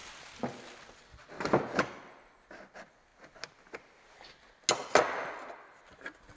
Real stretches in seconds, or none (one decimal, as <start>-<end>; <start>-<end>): 0.0-6.4